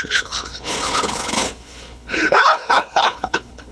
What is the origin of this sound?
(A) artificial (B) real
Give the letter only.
A